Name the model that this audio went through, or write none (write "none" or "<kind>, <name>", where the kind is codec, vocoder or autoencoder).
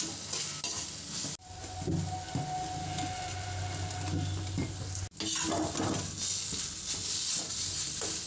none